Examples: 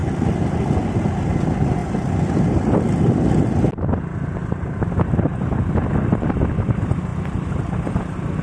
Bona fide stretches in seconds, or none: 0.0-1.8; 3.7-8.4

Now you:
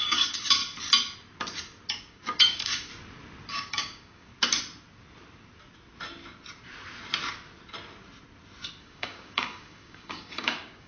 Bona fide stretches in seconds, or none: 0.6-2.0; 2.9-3.5; 4.3-8.8